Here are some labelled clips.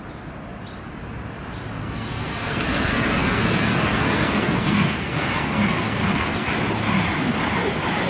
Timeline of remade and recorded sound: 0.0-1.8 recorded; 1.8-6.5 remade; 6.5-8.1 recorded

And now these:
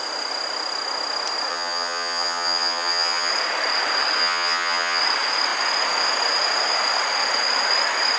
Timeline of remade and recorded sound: 0.0-1.5 recorded; 1.5-3.3 remade; 3.3-4.2 recorded; 4.2-5.0 remade; 5.0-8.2 recorded

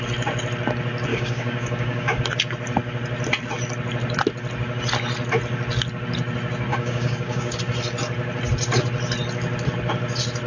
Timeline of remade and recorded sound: 0.0-1.1 recorded; 1.1-2.2 remade; 2.2-6.7 recorded; 6.7-7.6 remade; 7.6-10.5 recorded

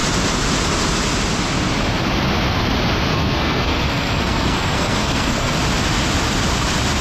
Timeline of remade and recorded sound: 0.0-3.1 recorded; 3.1-5.6 remade; 5.6-7.0 recorded

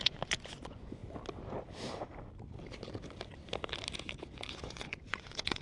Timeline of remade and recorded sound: 0.0-1.0 remade; 1.0-4.3 recorded; 4.3-5.6 remade

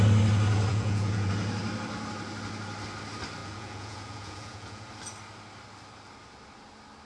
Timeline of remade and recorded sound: 0.0-0.7 recorded; 0.7-1.3 remade; 1.3-3.4 recorded; 3.4-4.9 remade; 4.9-7.1 recorded

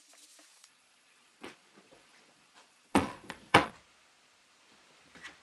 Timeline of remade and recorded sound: 0.0-0.5 recorded; 0.5-3.7 remade; 3.7-5.4 recorded

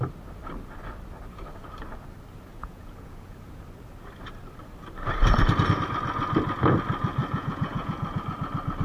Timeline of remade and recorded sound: 0.0-2.5 recorded; 2.5-3.6 remade; 3.6-7.2 recorded; 7.2-8.2 remade; 8.2-8.8 recorded